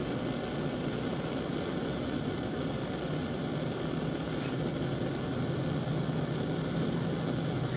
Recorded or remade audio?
recorded